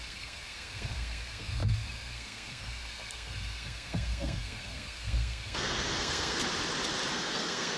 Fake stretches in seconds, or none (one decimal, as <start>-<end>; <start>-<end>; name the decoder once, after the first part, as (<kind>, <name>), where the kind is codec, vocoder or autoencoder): 0.0-6.4 (codec, SNAC); 7.1-7.8

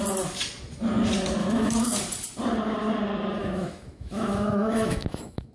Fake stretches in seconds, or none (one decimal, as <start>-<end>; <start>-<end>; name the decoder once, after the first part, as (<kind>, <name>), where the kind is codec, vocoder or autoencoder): 1.4-2.0 (autoencoder, DAC-VAE); 3.4-5.5

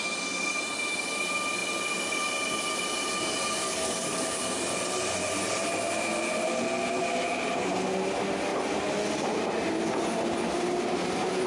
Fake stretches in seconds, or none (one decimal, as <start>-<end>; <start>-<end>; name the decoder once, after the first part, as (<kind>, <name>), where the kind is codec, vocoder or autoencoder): 3.6-4.4 (codec, DAC)